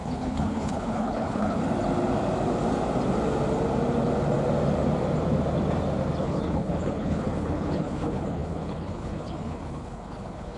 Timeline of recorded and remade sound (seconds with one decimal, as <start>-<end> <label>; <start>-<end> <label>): 0.0-1.6 remade; 1.6-6.2 recorded; 6.2-10.6 remade